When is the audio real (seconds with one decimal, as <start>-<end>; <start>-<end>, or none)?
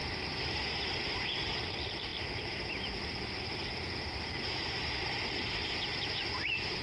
0.0-1.0